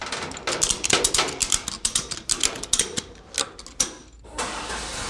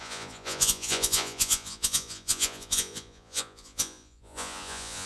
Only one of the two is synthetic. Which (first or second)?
second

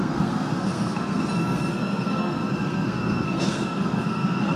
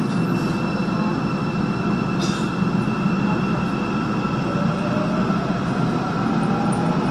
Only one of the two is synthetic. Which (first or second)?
first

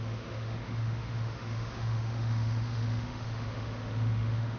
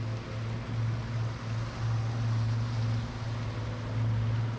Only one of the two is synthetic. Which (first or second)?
first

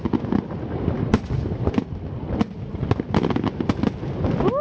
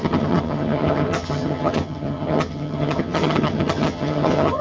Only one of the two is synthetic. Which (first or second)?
second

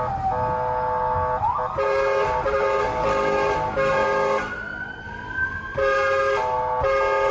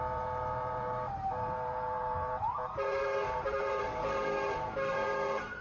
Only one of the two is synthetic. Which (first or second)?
second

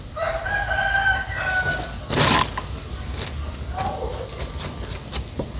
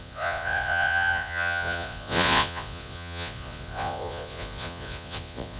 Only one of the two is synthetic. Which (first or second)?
second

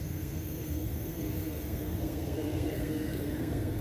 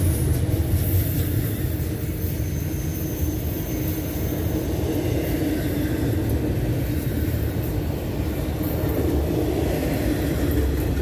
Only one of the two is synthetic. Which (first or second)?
first